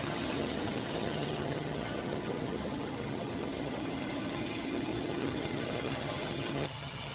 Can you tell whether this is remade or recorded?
remade